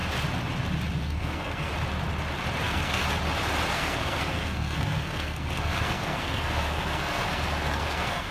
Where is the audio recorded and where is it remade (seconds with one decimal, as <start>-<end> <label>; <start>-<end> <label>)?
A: 0.0-1.0 recorded; 1.0-1.7 remade; 1.7-2.6 recorded; 2.6-3.0 remade; 3.0-3.7 recorded; 3.7-8.3 remade